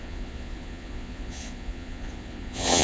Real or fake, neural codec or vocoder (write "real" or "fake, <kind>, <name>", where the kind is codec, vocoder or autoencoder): fake, vocoder, Vocos